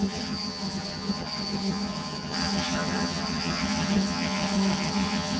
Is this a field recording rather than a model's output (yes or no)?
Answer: no